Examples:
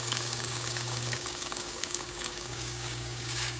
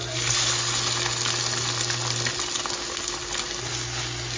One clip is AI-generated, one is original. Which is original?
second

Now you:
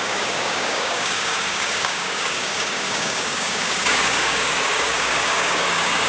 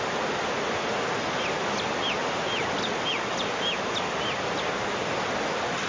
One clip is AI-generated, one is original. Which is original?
second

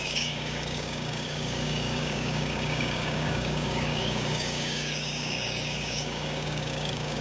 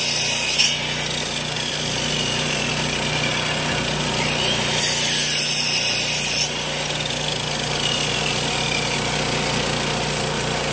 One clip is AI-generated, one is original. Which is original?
second